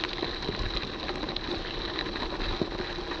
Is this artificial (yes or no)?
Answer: no